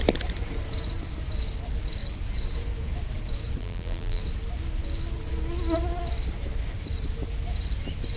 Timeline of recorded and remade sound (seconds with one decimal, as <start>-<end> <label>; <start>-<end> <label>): 0.0-3.6 recorded; 3.6-4.2 remade; 4.2-8.2 recorded